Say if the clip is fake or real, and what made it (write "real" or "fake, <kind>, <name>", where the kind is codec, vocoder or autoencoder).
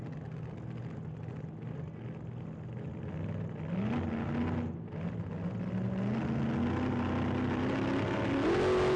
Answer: real